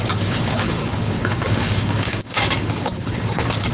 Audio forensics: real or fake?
fake